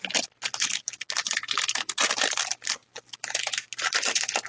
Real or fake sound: real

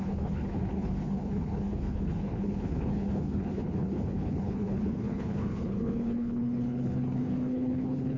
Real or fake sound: fake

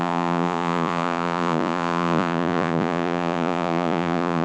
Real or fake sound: fake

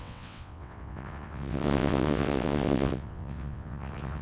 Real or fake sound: fake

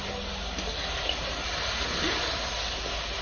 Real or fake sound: real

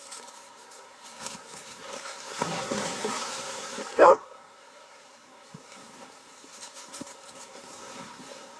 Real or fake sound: fake